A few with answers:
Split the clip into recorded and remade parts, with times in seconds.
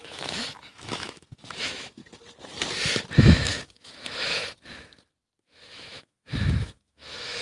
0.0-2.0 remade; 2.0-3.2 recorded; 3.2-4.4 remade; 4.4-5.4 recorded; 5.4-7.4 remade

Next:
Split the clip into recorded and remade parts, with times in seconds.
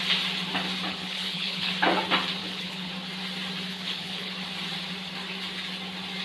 0.0-0.9 recorded; 0.9-1.7 remade; 1.7-2.4 recorded; 2.4-2.9 remade; 2.9-3.7 recorded; 3.7-4.3 remade; 4.3-6.2 recorded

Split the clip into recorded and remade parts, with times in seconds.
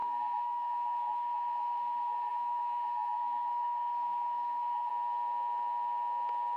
0.0-4.9 remade; 4.9-6.6 recorded